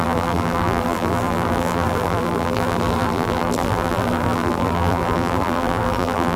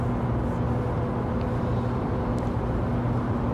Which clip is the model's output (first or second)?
first